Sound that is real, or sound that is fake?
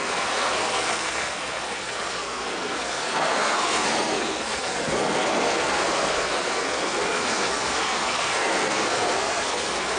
fake